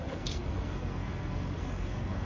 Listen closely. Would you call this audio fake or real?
fake